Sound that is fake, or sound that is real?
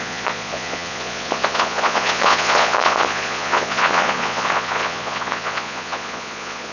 fake